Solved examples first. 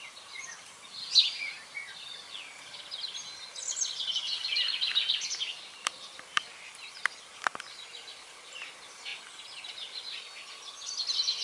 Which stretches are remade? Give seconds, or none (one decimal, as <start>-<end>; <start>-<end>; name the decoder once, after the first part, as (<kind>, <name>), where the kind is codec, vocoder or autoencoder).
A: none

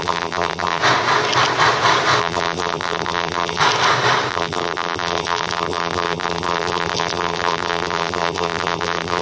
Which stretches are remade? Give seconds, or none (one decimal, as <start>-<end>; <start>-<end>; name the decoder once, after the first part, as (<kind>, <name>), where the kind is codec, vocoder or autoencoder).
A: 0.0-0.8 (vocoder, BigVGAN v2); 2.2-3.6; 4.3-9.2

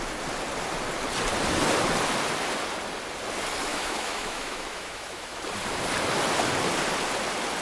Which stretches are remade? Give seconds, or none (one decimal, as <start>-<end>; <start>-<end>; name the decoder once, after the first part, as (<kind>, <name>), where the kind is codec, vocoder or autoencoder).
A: 3.7-5.4 (autoencoder, DAC-VAE)

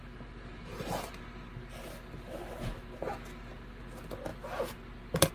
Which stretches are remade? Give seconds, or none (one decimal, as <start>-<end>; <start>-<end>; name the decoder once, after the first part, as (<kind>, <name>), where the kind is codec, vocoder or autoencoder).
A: none

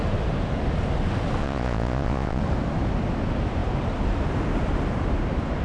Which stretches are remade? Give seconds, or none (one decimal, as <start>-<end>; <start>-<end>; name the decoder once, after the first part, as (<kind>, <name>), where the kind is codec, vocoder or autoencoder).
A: 1.4-2.4 (vocoder, Vocos)